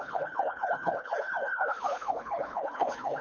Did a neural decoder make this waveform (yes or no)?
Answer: yes